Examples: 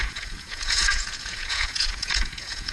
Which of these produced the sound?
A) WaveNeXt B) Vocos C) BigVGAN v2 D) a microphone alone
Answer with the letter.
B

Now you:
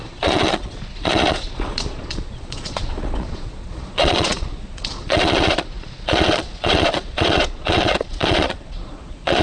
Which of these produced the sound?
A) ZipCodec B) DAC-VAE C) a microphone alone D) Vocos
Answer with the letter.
D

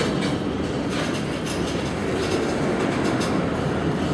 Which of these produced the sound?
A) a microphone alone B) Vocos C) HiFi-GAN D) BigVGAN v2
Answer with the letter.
A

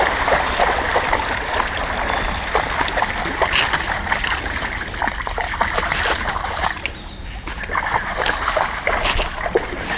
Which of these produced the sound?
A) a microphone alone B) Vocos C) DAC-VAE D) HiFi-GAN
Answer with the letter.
A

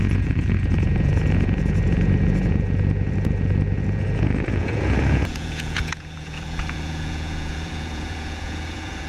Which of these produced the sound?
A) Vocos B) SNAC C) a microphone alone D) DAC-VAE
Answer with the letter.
A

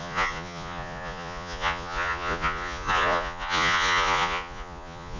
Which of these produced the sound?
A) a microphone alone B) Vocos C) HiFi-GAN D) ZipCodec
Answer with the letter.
B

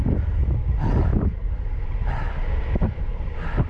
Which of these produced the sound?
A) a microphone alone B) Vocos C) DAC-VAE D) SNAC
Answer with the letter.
A